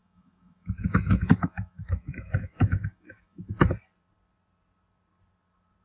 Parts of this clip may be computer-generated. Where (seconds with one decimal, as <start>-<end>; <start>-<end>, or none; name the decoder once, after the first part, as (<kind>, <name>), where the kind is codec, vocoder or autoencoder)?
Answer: 0.0-3.5 (autoencoder, DAC-VAE)